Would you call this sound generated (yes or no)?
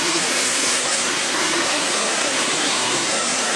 yes